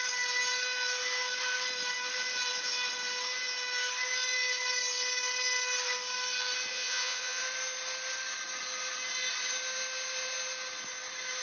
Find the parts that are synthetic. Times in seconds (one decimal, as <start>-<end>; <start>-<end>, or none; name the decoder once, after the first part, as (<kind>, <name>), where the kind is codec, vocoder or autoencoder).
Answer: 6.7-7.4 (vocoder, Vocos)